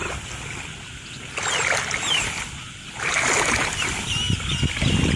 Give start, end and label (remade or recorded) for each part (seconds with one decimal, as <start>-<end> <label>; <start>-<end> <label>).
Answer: 0.0-5.2 recorded